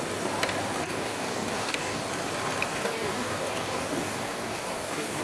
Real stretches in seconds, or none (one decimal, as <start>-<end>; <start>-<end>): 0.0-0.8; 2.0-2.7